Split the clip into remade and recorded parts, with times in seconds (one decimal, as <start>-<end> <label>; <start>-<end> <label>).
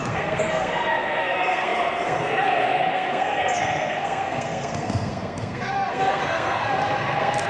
0.0-7.5 remade